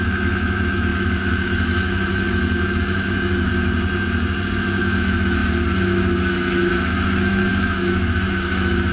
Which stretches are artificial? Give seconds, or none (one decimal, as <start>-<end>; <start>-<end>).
0.0-3.5; 4.8-5.4; 6.7-8.9